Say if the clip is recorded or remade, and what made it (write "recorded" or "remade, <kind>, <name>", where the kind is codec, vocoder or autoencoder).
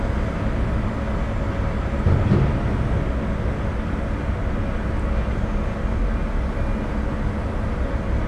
recorded